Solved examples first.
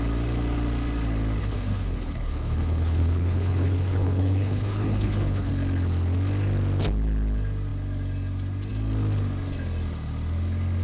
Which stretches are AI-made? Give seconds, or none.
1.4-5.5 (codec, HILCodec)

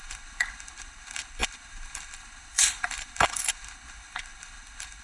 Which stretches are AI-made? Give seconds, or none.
0.0-5.0 (codec, HILCodec)

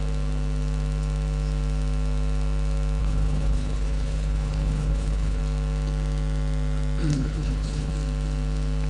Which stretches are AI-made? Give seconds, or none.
3.0-5.4 (codec, HILCodec); 7.1-7.9

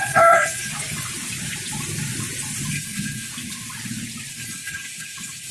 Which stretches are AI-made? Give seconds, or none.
0.0-0.7 (codec, HILCodec); 2.7-3.3; 4.3-5.5

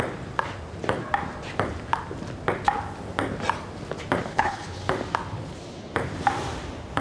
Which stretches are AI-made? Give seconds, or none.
4.3-4.8 (codec, HILCodec)

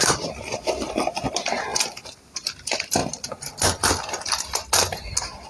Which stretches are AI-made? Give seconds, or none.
none

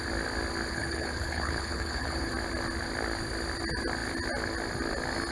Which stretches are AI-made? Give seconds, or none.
0.7-2.3 (codec, HILCodec)